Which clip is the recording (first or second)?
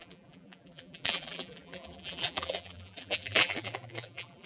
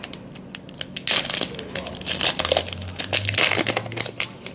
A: second